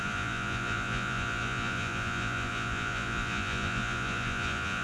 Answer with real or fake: fake